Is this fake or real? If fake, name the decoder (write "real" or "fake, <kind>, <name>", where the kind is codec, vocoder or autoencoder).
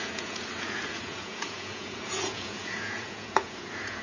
fake, vocoder, Vocos